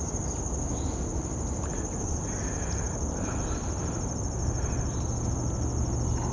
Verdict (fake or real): real